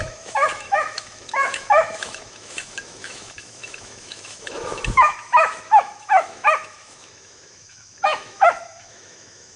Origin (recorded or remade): remade